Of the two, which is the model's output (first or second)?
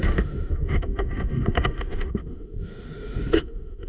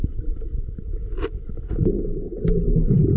first